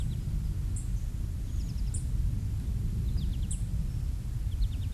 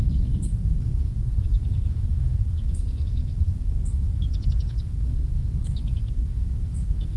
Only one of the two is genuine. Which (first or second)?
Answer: first